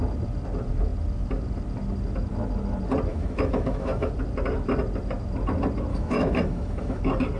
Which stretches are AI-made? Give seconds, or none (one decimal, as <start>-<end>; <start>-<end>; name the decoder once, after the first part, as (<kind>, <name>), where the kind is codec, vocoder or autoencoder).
3.1-4.1 (autoencoder, DAC-VAE); 5.9-7.0